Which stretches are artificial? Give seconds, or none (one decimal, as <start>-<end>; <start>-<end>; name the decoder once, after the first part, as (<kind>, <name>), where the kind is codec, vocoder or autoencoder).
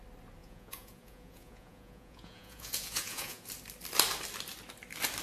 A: 0.4-3.5 (vocoder, Vocos)